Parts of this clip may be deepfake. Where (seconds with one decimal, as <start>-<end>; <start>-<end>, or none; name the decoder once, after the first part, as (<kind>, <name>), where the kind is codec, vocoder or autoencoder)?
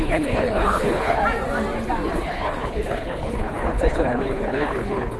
0.0-1.2 (codec, HILCodec); 2.1-5.2